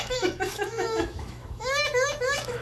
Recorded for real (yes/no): no